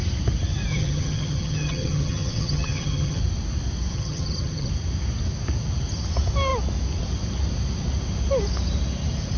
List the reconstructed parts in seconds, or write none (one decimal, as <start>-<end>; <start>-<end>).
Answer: 0.7-3.2; 3.9-4.7